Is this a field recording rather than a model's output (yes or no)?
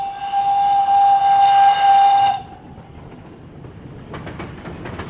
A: yes